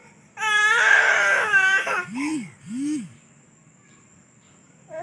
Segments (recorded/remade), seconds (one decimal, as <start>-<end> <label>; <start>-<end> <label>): 0.0-0.9 recorded; 0.9-5.0 remade